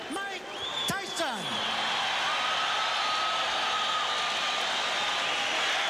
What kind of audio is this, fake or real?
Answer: real